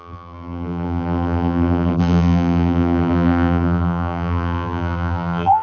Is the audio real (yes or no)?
no